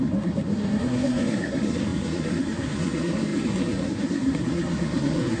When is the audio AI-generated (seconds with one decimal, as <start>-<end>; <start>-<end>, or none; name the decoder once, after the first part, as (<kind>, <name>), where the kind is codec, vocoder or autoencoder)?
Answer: 0.0-5.4 (codec, SNAC)